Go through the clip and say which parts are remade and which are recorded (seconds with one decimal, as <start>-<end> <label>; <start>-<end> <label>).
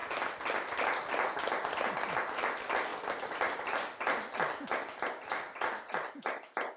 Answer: 0.0-6.8 recorded